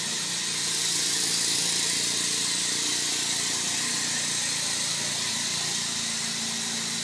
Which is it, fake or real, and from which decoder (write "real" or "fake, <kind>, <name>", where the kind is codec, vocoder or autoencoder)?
real